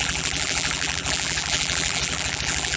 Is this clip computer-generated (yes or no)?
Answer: yes